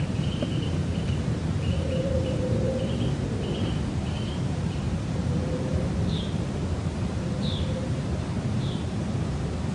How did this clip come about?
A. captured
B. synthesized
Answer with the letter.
B